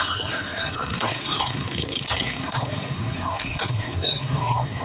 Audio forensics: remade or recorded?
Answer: remade